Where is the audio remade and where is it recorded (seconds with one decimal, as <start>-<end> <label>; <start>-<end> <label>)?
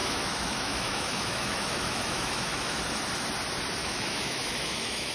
0.0-2.8 remade; 2.8-3.8 recorded; 3.8-5.1 remade